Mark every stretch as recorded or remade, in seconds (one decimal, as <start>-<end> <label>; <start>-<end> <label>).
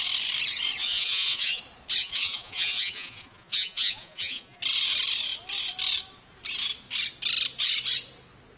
0.0-0.8 recorded; 0.8-1.6 remade; 1.6-2.0 recorded; 2.0-4.6 remade; 4.6-8.6 recorded